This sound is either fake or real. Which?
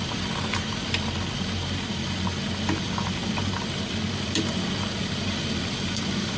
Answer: fake